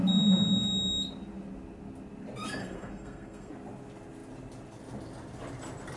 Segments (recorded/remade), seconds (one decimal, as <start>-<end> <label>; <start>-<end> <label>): 0.0-2.6 recorded; 2.6-3.5 remade; 3.5-6.0 recorded